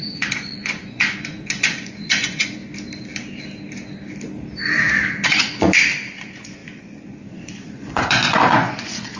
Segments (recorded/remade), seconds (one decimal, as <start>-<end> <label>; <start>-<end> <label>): 0.0-2.6 remade; 2.6-5.0 recorded; 5.0-9.2 remade